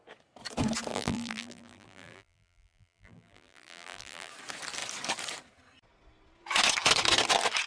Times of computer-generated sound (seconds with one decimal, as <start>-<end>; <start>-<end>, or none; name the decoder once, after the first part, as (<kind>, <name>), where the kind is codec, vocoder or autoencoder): 0.9-4.3 (vocoder, BigVGAN v2)

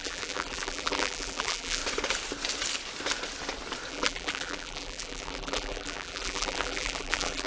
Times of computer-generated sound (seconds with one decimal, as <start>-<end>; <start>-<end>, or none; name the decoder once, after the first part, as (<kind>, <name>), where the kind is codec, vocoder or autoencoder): 0.0-1.8 (vocoder, BigVGAN v2); 3.9-7.5